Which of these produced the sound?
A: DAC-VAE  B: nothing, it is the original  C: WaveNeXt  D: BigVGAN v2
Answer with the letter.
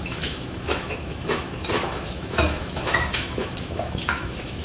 A